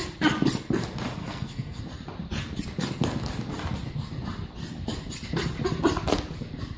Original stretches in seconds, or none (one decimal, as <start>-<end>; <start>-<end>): 0.0-1.2; 1.8-6.8

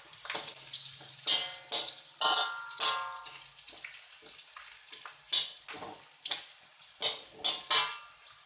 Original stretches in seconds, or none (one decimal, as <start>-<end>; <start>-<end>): 0.0-8.5

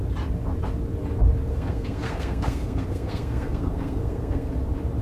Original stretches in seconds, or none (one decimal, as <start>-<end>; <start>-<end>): 0.0-1.5; 4.5-5.0

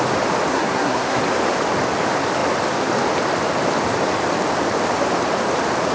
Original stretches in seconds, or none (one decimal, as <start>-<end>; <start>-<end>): 0.0-0.5; 1.2-5.9

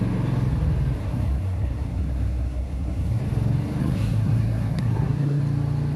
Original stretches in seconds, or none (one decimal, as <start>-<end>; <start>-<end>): 0.0-1.0; 3.2-3.8; 5.4-6.0

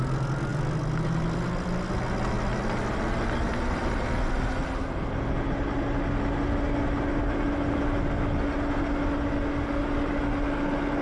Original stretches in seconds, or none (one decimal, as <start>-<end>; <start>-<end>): 0.0-11.0

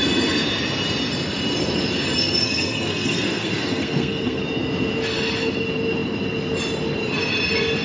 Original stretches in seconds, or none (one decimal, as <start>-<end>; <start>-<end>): 0.0-2.2; 4.4-7.8